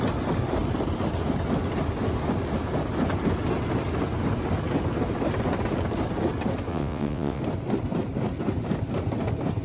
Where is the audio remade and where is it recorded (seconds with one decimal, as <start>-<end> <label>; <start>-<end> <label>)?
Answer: 0.0-6.7 recorded; 6.7-7.4 remade; 7.4-9.6 recorded